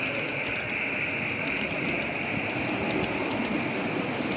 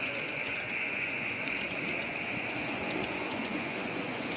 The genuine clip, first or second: first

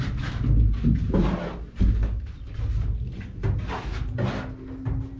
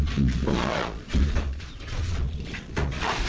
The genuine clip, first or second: first